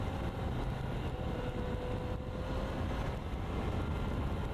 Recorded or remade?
recorded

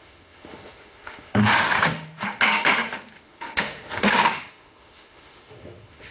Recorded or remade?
remade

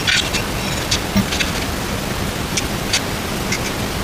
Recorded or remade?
recorded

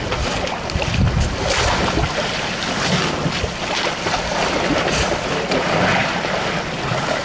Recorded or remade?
recorded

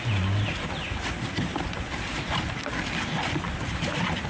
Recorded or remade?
recorded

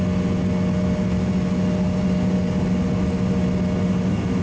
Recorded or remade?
recorded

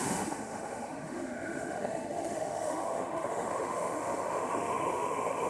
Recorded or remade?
remade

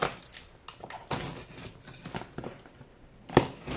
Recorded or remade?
recorded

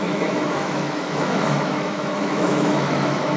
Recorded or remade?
remade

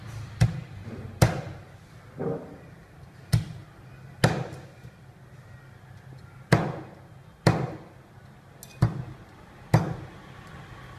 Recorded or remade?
recorded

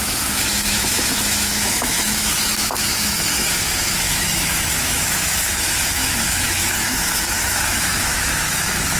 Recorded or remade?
remade